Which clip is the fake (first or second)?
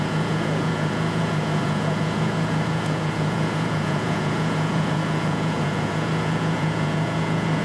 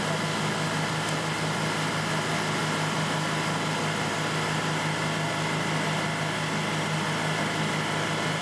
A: first